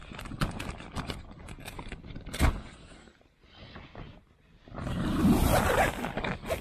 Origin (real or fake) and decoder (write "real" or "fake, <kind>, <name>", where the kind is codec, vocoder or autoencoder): real